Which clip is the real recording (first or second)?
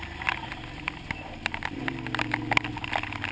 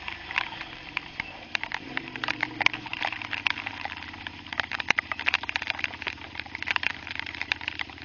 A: first